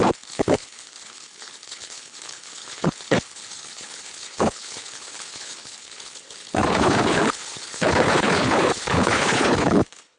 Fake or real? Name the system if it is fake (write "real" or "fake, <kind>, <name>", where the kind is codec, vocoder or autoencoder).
fake, codec, HILCodec